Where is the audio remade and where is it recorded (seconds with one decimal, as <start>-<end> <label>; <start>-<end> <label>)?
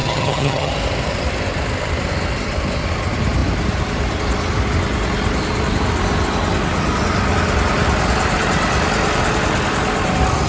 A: 0.0-0.7 remade; 0.7-10.5 recorded